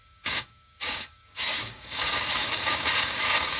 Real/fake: fake